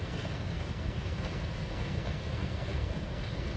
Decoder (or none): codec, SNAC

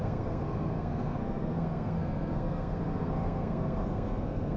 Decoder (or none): codec, SNAC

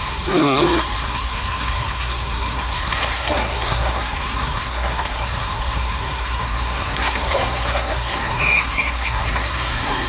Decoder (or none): codec, SNAC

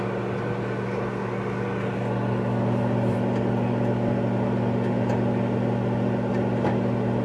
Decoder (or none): none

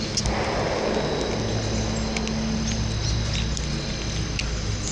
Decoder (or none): none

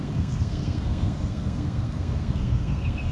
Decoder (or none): codec, SNAC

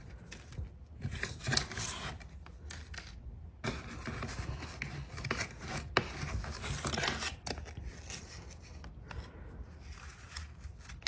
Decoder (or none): none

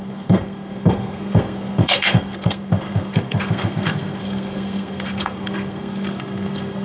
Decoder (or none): codec, SNAC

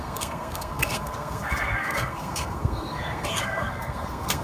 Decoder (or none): codec, SNAC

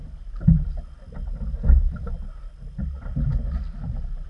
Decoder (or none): none